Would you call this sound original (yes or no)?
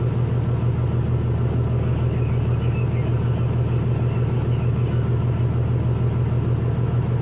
yes